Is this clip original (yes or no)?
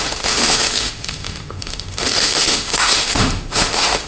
no